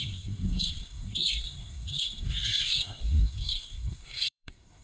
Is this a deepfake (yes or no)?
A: yes